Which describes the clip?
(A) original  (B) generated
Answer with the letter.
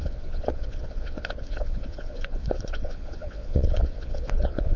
B